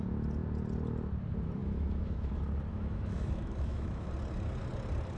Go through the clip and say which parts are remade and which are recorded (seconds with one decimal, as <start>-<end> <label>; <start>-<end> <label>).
0.0-1.6 recorded; 1.6-2.3 remade; 2.3-2.7 recorded; 2.7-4.1 remade; 4.1-5.2 recorded

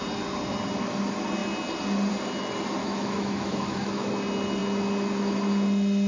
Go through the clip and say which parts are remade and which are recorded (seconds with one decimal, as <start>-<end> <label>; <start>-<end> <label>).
0.0-2.8 recorded; 2.8-4.1 remade; 4.1-6.1 recorded

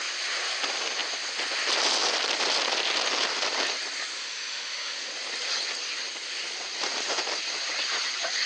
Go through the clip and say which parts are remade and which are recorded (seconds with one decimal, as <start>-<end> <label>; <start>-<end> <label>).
0.0-4.1 recorded; 4.1-5.1 remade; 5.1-8.5 recorded

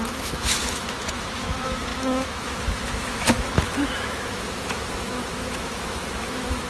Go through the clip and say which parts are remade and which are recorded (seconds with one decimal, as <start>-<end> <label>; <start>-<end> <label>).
0.0-6.7 remade

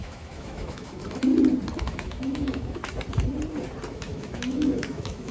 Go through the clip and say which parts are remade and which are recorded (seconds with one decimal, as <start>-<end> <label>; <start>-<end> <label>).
0.0-1.3 remade; 1.3-1.8 recorded; 1.8-2.8 remade; 2.8-3.9 recorded; 3.9-5.3 remade

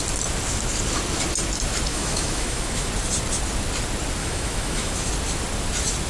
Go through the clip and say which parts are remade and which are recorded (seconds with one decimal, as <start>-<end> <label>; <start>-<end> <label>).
0.0-1.9 recorded; 1.9-2.9 remade; 2.9-4.2 recorded; 4.2-5.1 remade; 5.1-6.1 recorded